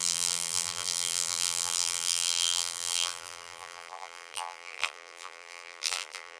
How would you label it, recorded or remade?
remade